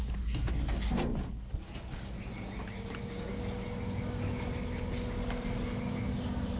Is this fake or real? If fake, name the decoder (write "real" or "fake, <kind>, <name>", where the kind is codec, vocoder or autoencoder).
real